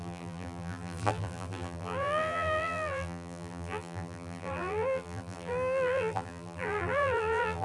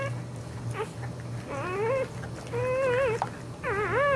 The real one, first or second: second